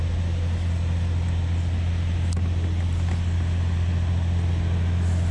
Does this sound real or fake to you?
real